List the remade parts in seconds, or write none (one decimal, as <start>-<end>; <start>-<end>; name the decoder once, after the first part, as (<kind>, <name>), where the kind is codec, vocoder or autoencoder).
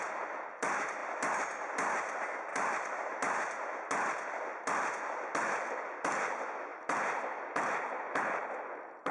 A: 2.5-3.6 (vocoder, BigVGAN v2)